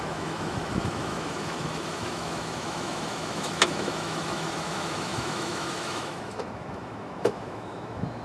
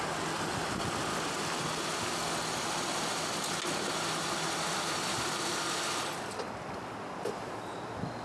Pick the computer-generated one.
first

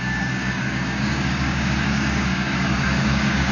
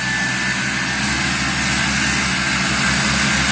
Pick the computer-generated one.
first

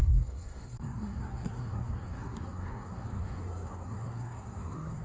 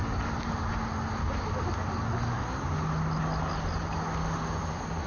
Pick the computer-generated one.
first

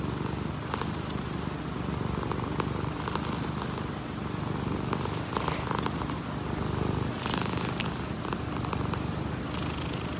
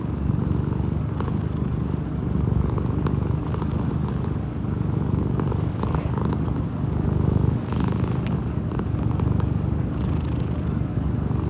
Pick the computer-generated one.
second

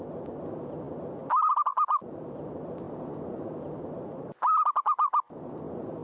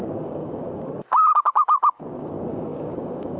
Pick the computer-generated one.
second